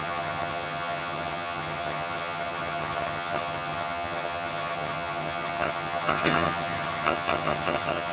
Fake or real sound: fake